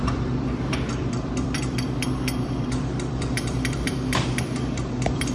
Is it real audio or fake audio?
fake